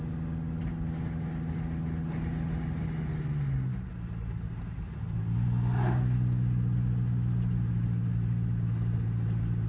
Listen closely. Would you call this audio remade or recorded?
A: recorded